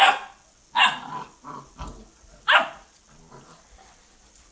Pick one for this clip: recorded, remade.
recorded